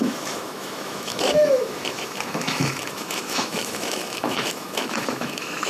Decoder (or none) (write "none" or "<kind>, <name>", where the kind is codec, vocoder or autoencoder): autoencoder, DAC-VAE